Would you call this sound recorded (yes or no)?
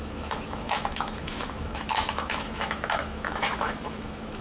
no